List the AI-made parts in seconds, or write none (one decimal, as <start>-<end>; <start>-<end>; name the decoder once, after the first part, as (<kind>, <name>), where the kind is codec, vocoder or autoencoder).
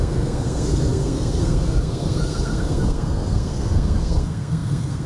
0.0-5.1 (codec, SNAC)